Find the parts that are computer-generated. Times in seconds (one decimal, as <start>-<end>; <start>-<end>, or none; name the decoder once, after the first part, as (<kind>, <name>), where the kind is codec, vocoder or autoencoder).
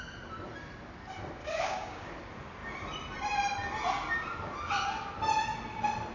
1.4-2.1 (codec, DAC)